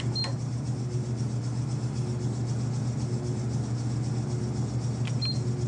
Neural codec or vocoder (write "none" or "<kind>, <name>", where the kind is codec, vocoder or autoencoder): none